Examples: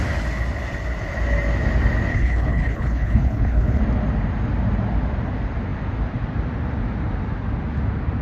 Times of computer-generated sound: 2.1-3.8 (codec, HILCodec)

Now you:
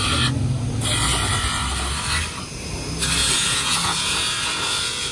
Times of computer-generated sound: 3.2-5.1 (vocoder, Vocos)